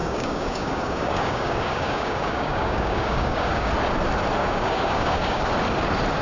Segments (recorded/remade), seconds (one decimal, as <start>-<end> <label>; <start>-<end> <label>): 0.0-3.7 remade; 3.7-4.4 recorded; 4.4-5.4 remade; 5.4-6.2 recorded